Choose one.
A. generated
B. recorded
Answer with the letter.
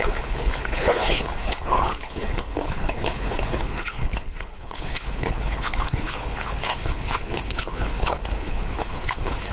A